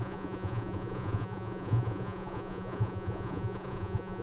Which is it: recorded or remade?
remade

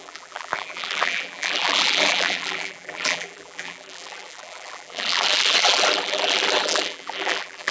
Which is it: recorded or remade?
remade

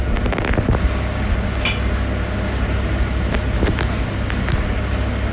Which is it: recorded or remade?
recorded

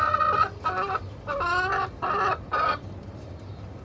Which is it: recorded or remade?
recorded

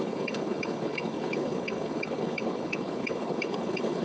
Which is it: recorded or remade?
remade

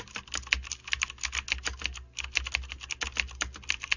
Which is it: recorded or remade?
recorded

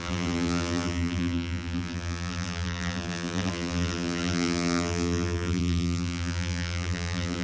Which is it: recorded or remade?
remade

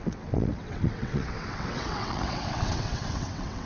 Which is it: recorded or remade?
remade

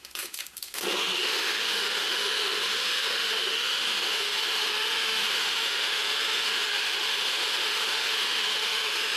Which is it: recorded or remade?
remade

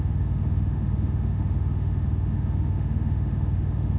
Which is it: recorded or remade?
remade